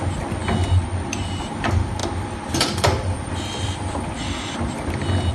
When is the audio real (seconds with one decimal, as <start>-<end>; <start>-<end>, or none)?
0.0-0.6; 1.5-2.0